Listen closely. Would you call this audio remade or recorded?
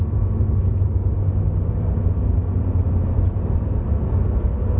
recorded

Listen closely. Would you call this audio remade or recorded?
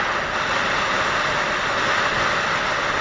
recorded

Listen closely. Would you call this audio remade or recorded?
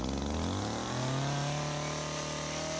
recorded